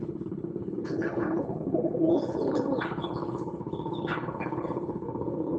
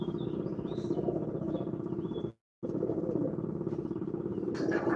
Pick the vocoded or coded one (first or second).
first